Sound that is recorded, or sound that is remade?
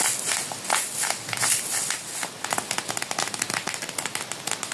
recorded